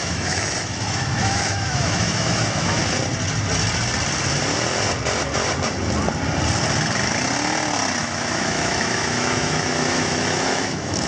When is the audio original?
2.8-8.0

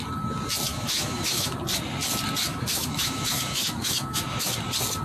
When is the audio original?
0.0-0.7; 1.6-2.5; 4.5-5.0